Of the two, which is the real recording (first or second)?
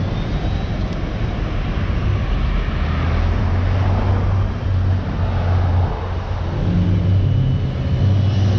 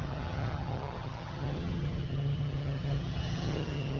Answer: first